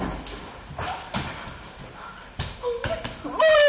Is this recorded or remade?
recorded